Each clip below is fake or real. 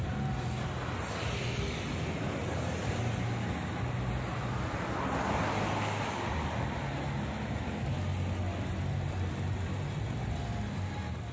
real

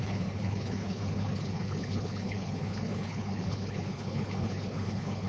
fake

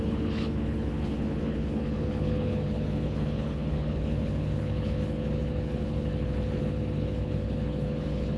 fake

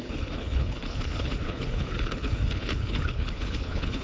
fake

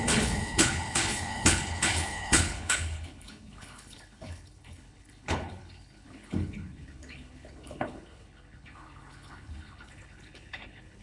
fake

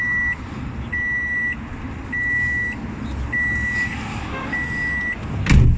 real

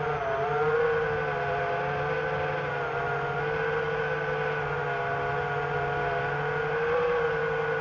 real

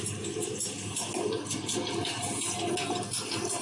real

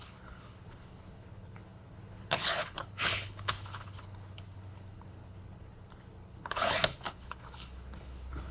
fake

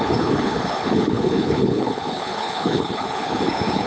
fake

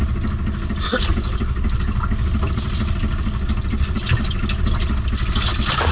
real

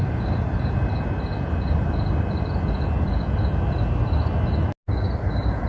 real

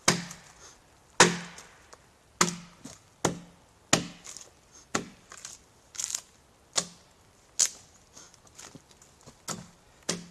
real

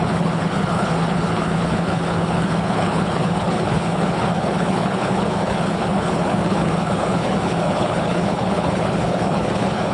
fake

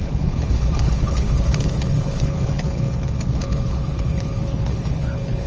fake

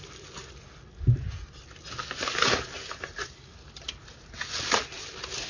real